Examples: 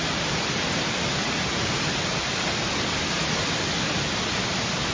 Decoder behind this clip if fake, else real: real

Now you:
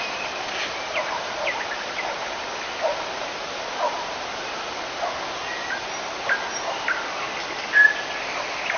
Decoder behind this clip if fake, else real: real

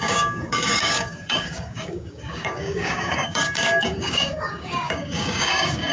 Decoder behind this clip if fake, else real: fake, codec, DAC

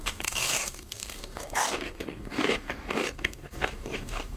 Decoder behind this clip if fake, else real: fake, codec, DAC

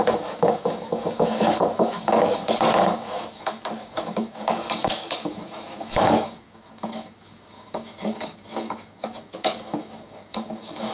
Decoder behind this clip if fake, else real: fake, codec, DAC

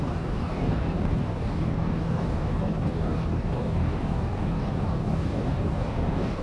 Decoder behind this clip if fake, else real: fake, codec, DAC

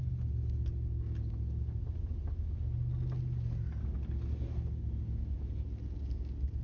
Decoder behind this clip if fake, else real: real